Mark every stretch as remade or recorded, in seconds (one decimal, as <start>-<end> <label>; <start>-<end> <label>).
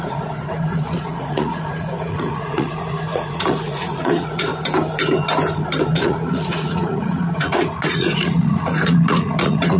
0.0-4.5 remade; 4.5-5.9 recorded; 5.9-9.8 remade